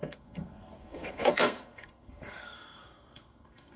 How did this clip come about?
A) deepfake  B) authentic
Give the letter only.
A